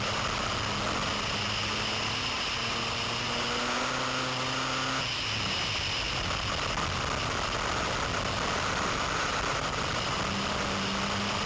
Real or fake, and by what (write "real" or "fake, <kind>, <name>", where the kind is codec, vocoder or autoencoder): real